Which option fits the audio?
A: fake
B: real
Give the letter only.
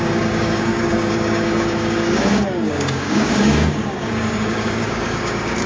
A